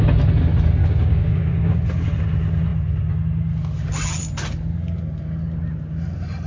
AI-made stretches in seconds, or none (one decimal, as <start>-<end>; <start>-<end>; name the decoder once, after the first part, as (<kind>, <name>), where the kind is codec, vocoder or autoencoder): 0.8-1.8 (codec, DAC)